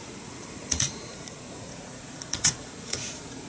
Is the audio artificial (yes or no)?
yes